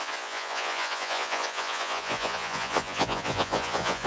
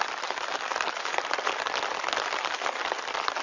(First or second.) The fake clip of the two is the first